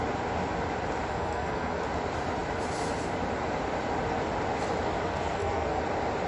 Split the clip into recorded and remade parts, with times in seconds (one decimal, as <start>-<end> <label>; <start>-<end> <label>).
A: 0.0-1.1 recorded; 1.1-1.8 remade; 1.8-5.1 recorded; 5.1-5.8 remade; 5.8-6.3 recorded